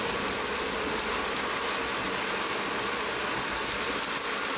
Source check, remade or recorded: recorded